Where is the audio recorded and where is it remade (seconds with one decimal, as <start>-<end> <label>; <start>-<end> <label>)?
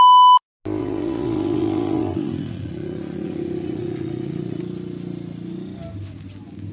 0.0-0.8 recorded; 0.8-4.6 remade; 4.6-6.7 recorded